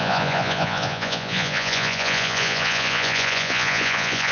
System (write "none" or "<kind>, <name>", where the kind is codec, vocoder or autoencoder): vocoder, Vocos